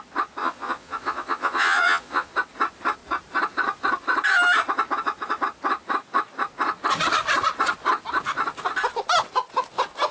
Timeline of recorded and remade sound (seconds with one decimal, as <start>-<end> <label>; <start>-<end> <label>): 0.0-0.4 recorded; 0.4-2.3 remade; 2.3-10.1 recorded